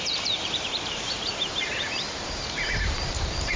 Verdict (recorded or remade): remade